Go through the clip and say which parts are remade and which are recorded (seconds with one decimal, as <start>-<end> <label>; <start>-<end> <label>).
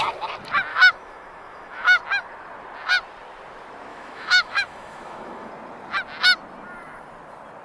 0.0-0.7 recorded; 0.7-2.0 remade; 2.0-3.9 recorded; 3.9-5.5 remade; 5.5-7.6 recorded